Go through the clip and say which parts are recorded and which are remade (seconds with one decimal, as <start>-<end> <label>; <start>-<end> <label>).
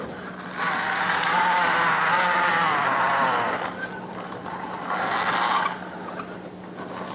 0.0-7.1 recorded